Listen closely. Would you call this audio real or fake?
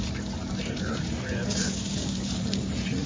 fake